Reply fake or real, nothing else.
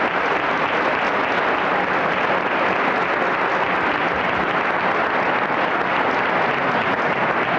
real